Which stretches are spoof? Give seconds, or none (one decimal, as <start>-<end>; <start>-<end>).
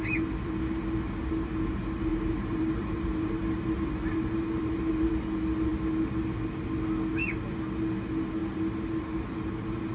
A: 2.1-5.1